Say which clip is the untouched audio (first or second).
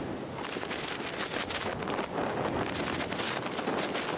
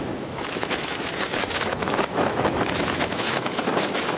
first